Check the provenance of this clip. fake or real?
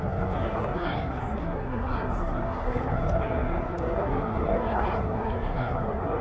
fake